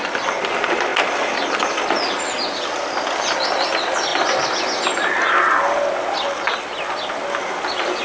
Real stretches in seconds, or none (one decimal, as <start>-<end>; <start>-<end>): 0.0-8.0